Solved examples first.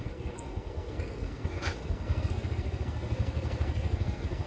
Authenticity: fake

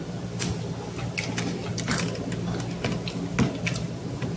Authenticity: real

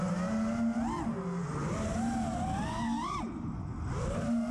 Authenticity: real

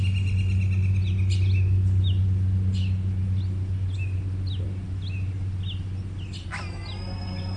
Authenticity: real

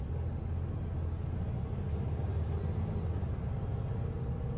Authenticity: real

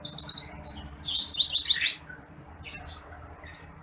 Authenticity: real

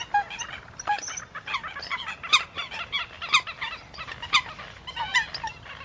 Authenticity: real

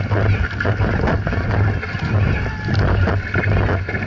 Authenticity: real